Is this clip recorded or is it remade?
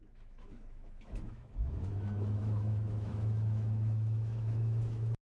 remade